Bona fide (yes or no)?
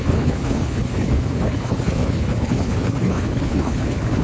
no